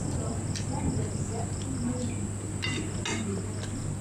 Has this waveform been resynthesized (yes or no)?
no